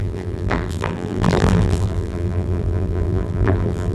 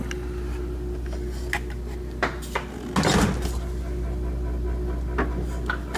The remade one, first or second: first